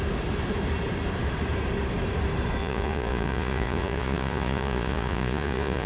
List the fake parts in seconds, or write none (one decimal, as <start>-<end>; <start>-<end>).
2.6-5.9